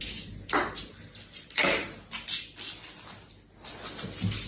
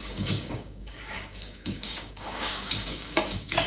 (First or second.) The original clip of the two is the first